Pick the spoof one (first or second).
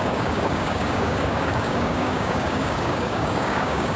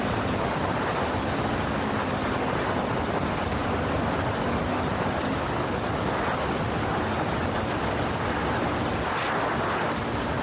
first